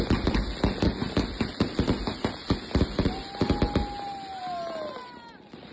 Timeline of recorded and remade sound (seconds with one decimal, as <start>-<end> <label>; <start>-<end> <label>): 0.0-5.7 recorded